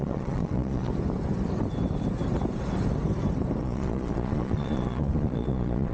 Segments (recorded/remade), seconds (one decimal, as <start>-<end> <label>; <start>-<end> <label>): 0.0-0.9 remade; 0.9-3.6 recorded; 3.6-5.9 remade